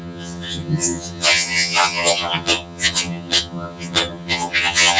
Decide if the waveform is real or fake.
fake